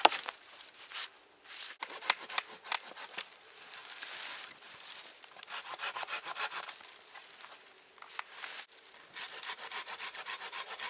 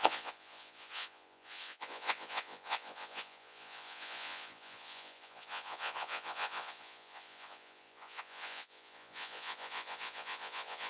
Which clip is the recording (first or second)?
first